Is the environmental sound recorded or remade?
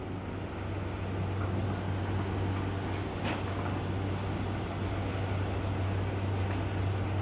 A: recorded